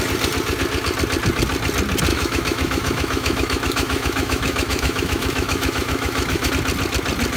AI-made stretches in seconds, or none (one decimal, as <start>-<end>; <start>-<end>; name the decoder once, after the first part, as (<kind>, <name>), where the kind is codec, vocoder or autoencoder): 2.1-6.5 (autoencoder, DAC-VAE)